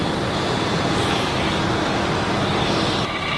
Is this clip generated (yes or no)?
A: no